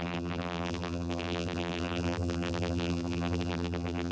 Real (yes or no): no